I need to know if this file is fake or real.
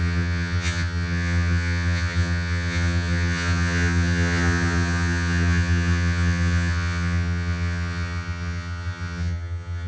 fake